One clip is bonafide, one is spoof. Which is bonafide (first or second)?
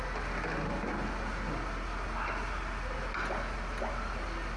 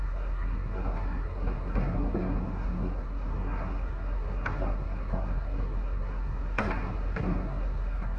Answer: first